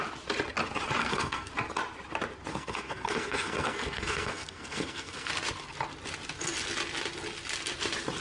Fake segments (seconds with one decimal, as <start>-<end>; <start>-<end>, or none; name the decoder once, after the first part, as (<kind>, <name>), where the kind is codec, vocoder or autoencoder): 1.0-1.5 (codec, SNAC); 2.5-5.3